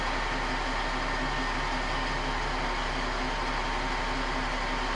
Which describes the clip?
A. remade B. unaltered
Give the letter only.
B